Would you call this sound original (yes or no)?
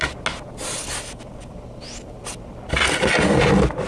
yes